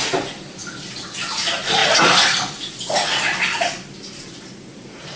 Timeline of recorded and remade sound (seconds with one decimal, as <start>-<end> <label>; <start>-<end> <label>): 0.0-5.2 recorded